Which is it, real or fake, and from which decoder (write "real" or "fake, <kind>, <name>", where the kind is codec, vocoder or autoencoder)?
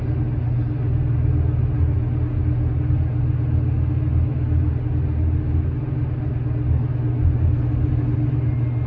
real